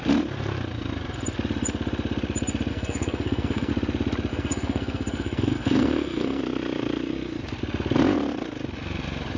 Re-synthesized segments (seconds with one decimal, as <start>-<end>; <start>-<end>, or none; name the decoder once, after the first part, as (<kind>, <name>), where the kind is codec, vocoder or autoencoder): 2.7-3.7 (codec, SNAC); 4.3-6.4